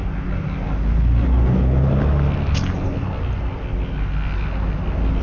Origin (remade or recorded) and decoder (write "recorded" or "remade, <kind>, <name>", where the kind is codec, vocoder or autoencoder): recorded